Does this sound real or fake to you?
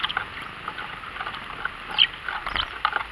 real